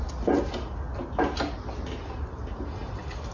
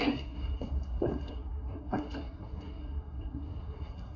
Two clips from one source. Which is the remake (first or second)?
second